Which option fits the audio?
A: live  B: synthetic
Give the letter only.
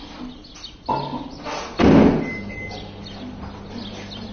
A